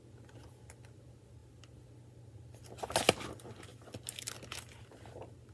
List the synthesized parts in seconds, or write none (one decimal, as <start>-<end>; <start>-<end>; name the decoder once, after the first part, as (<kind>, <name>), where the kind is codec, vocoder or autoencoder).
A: none